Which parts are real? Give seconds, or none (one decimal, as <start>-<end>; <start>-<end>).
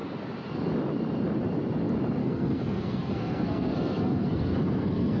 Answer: 0.0-2.2